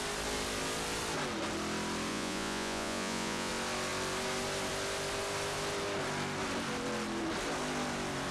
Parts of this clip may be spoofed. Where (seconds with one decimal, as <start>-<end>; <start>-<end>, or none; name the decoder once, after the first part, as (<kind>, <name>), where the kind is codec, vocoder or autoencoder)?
2.1-3.5 (vocoder, Vocos)